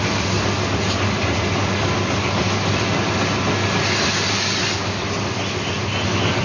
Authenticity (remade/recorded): recorded